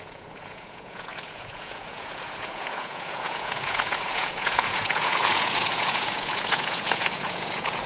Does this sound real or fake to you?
fake